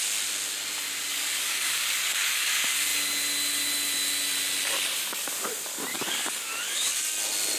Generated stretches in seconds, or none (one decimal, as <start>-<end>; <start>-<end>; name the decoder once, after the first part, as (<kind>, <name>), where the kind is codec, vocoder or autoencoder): 1.1-2.5 (codec, DAC); 5.9-7.0